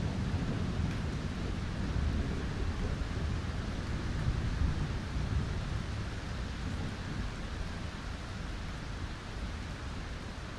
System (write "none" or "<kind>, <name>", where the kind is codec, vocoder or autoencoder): none